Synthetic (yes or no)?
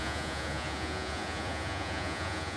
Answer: yes